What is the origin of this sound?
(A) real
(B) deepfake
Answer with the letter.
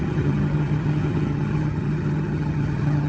B